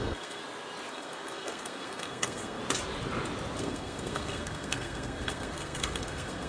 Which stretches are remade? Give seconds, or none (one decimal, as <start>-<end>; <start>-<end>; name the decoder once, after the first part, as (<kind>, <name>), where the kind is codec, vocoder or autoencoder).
0.0-0.4 (codec, SNAC); 0.9-2.6; 3.6-6.5

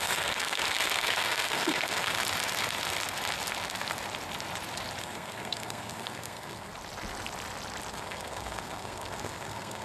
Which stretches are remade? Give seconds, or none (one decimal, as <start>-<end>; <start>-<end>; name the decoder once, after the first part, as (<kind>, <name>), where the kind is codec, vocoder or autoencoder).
0.0-2.2 (codec, SNAC); 5.0-6.7; 7.9-9.8

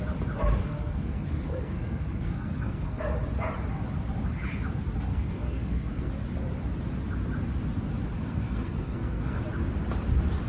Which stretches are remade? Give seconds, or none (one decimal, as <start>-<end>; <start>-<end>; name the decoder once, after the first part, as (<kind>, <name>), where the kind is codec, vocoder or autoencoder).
0.6-3.0 (codec, SNAC); 5.1-6.1; 8.2-9.4